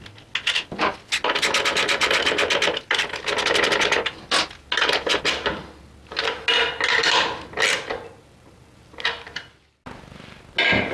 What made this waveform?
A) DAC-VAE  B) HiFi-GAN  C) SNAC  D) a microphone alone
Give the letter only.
D